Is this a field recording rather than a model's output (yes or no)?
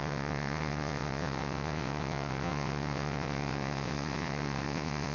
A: no